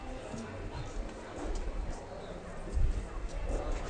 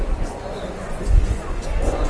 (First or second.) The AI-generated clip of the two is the second